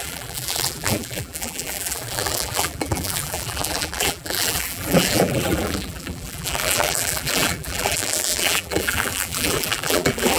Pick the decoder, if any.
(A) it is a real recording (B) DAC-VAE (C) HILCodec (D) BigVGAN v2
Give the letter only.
D